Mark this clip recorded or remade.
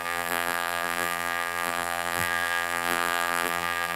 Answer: remade